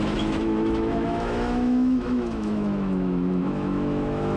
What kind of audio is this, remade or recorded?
remade